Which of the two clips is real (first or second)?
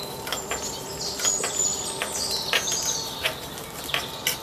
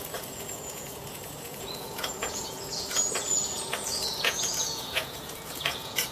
first